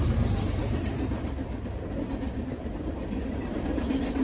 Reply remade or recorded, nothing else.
remade